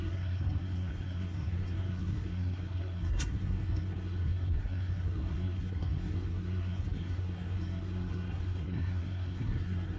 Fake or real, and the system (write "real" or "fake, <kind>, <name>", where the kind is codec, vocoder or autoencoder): fake, codec, SNAC